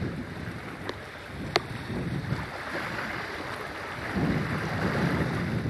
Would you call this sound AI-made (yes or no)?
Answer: no